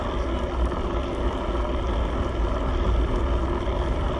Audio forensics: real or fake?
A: real